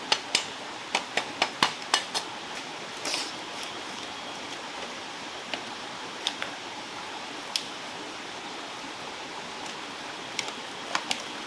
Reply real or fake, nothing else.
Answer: real